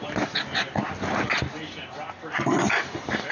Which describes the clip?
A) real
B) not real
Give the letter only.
A